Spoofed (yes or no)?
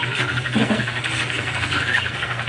yes